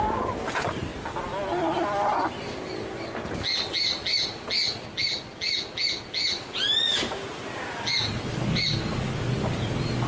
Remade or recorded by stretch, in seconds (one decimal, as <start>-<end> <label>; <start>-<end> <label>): 0.0-10.1 recorded